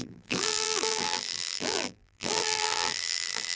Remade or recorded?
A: remade